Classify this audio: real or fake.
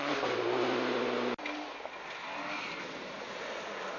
real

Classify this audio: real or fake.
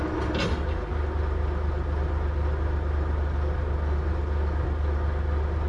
real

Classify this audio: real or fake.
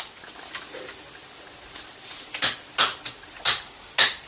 real